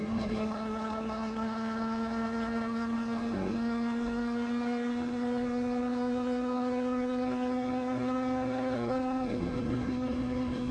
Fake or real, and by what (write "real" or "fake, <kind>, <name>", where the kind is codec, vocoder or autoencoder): fake, codec, SNAC